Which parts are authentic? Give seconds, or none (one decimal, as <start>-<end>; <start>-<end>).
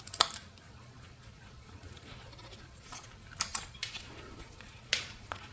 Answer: 0.0-0.6; 3.1-3.5